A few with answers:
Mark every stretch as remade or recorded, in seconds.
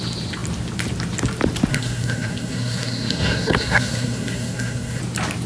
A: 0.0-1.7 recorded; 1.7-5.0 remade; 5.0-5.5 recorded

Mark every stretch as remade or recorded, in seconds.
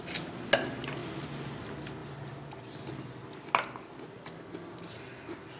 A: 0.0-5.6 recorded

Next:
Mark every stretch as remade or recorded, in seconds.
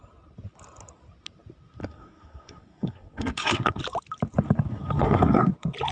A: 0.0-1.8 recorded; 1.8-3.8 remade; 3.8-4.7 recorded; 4.7-5.5 remade; 5.5-5.9 recorded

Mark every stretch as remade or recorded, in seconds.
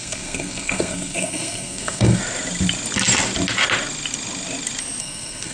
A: 0.0-2.2 remade; 2.2-5.0 recorded; 5.0-5.5 remade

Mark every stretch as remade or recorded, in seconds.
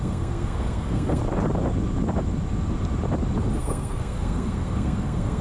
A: 0.0-1.2 remade; 1.2-3.6 recorded; 3.6-5.4 remade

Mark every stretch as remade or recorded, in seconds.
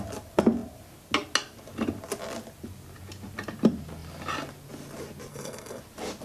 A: 0.0-5.3 recorded; 5.3-5.8 remade; 5.8-6.2 recorded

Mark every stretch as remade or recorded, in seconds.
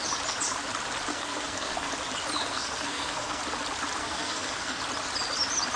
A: 0.0-1.1 recorded; 1.1-1.9 remade; 1.9-2.5 recorded; 2.5-3.4 remade; 3.4-4.0 recorded; 4.0-4.8 remade; 4.8-5.8 recorded